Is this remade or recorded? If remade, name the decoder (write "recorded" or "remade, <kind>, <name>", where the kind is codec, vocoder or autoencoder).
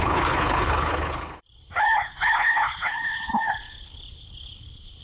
remade, codec, HILCodec